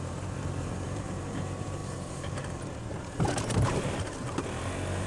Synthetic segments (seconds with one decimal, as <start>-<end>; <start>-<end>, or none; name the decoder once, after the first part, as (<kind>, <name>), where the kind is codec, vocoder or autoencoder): 0.0-5.1 (vocoder, BigVGAN v2)